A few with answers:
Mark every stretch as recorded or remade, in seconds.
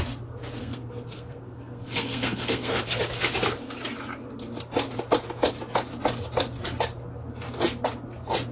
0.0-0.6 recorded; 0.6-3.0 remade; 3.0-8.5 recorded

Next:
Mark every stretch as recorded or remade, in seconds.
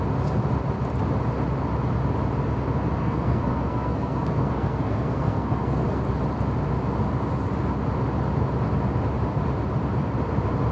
0.0-3.0 recorded; 3.0-6.0 remade; 6.0-10.7 recorded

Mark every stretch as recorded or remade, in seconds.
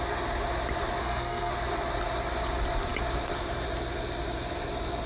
0.0-1.0 recorded; 1.0-1.5 remade; 1.5-5.1 recorded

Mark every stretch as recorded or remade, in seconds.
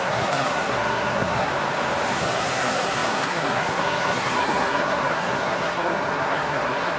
0.0-1.5 remade; 1.5-2.1 recorded; 2.1-7.0 remade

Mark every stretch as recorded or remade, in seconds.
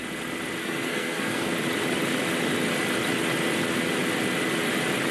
0.0-0.6 recorded; 0.6-1.5 remade; 1.5-5.1 recorded